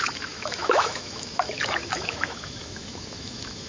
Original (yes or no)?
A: no